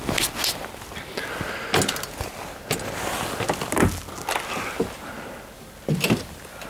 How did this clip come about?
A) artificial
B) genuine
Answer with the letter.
B